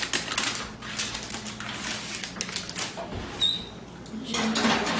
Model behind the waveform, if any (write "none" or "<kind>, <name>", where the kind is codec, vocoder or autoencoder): none